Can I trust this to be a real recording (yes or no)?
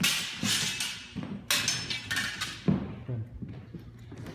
yes